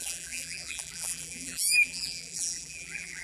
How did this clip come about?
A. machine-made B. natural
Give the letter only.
A